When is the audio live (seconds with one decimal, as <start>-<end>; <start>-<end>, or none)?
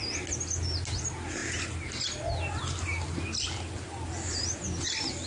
0.0-5.3